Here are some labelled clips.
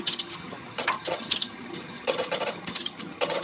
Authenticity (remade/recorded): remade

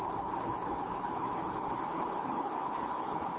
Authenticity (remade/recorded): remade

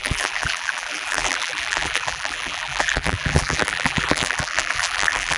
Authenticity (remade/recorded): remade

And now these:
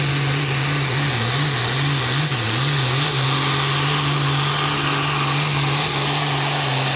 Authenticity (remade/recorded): recorded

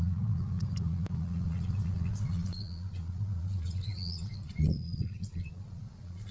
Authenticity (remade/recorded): remade